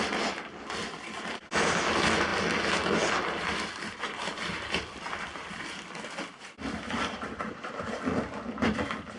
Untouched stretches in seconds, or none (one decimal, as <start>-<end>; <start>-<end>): 0.0-9.2